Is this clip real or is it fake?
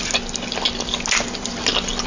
real